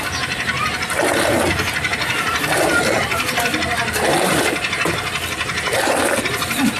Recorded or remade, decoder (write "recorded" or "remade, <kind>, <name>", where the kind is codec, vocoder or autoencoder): recorded